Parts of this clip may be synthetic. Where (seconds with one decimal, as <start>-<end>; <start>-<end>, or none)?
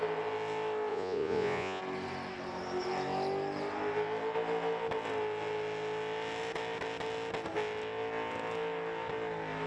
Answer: 0.9-1.8